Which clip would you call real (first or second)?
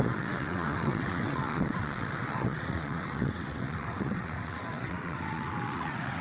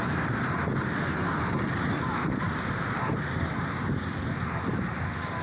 second